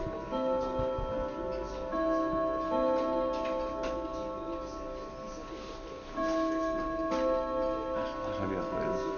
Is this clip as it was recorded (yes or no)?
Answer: yes